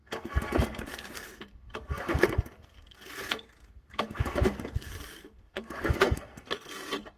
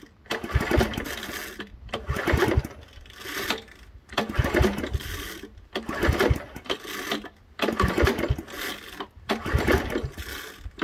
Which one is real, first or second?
second